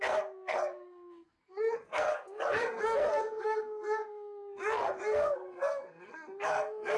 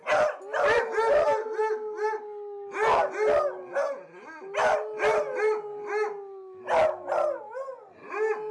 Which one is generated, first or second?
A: first